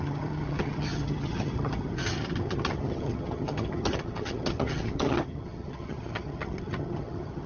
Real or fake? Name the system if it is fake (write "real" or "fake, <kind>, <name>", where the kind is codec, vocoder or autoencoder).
fake, vocoder, HiFi-GAN